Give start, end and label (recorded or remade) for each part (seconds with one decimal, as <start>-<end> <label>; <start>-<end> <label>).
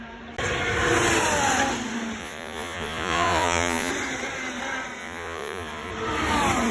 0.0-2.2 recorded; 2.2-3.9 remade; 3.9-5.0 recorded; 5.0-5.9 remade; 5.9-6.7 recorded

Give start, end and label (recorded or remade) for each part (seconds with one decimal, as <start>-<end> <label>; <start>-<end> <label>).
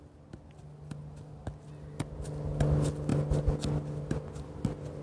0.0-5.0 recorded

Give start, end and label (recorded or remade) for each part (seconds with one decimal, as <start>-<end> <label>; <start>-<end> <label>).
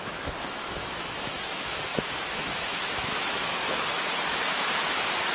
0.0-3.5 remade; 3.5-5.3 recorded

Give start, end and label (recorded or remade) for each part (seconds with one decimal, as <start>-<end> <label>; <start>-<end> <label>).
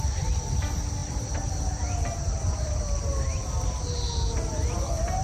0.0-5.2 recorded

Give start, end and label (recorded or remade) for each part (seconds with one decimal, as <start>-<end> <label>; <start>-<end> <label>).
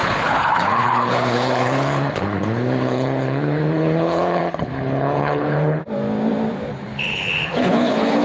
0.0-5.8 remade; 5.8-6.7 recorded; 6.7-8.2 remade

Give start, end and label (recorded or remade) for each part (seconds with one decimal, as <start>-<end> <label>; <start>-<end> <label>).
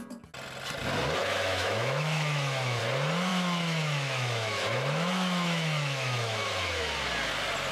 0.0-1.2 recorded; 1.2-2.8 remade; 2.8-3.3 recorded; 3.3-6.8 remade; 6.8-7.7 recorded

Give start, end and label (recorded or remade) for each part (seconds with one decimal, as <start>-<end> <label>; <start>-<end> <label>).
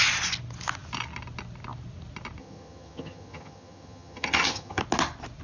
0.0-2.4 recorded; 2.4-4.8 remade; 4.8-5.4 recorded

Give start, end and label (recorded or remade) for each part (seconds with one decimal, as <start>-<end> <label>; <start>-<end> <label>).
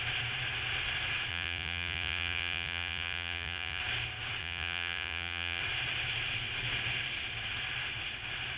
0.0-1.3 recorded; 1.3-3.8 remade; 3.8-4.4 recorded; 4.4-5.6 remade; 5.6-8.6 recorded